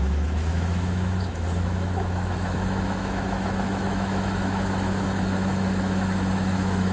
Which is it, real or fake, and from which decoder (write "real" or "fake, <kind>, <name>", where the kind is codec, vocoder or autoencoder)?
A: fake, autoencoder, DAC-VAE